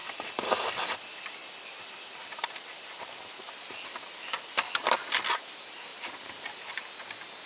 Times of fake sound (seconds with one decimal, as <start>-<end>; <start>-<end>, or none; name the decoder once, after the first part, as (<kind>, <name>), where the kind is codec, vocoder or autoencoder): 0.0-0.7 (vocoder, BigVGAN v2); 2.2-3.4; 5.9-6.7